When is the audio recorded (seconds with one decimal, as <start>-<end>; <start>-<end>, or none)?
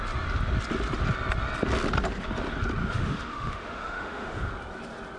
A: 0.0-2.8; 4.5-5.2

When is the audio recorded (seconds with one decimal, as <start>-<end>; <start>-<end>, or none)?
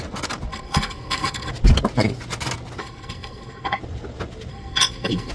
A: 0.0-0.5; 1.5-2.8; 3.8-4.5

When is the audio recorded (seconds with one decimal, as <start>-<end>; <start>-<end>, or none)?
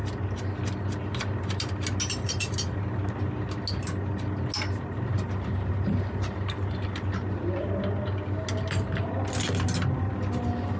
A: 0.0-10.8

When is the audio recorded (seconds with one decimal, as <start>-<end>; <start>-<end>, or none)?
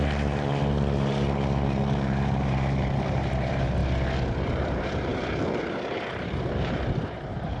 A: 3.8-4.3